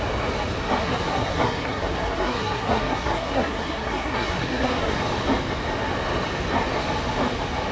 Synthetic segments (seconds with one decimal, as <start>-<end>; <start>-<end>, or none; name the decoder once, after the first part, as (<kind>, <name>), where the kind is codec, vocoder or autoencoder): 0.8-5.0 (codec, SNAC)